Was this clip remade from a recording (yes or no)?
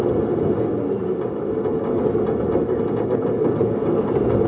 no